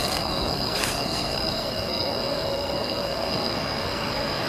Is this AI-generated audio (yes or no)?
yes